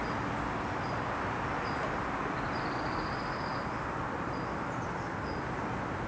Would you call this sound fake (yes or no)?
no